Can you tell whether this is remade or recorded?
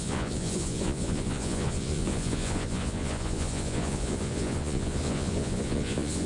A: remade